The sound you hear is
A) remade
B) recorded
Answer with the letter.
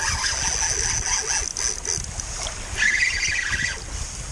B